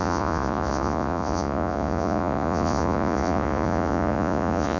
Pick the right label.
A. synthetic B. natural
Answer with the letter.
A